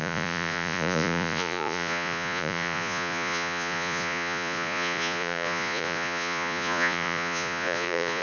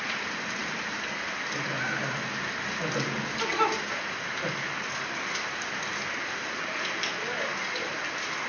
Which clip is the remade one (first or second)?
first